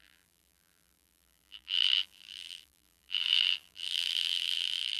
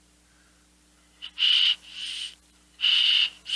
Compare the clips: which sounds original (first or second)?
second